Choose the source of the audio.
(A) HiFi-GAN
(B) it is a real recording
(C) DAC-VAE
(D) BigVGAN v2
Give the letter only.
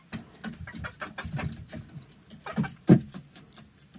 B